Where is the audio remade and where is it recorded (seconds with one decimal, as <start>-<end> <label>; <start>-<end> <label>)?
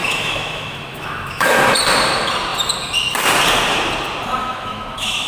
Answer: 0.0-1.5 remade; 1.5-4.4 recorded; 4.4-5.3 remade